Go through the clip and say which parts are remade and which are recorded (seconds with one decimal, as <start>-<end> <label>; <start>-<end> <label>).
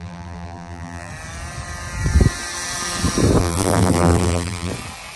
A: 0.0-1.1 remade; 1.1-3.4 recorded; 3.4-4.7 remade; 4.7-5.2 recorded